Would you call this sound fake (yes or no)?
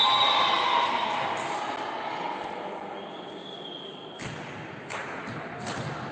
no